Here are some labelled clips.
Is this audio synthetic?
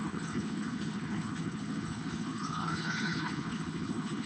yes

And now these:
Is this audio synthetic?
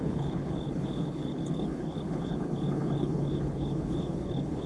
yes